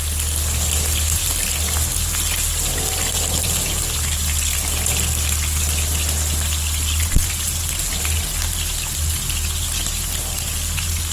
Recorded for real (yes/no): yes